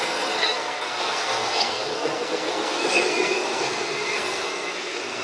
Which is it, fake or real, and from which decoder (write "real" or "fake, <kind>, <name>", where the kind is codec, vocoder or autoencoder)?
fake, codec, SNAC